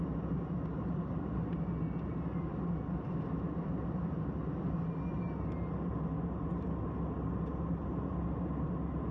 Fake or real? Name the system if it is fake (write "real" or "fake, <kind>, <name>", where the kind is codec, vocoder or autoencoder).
real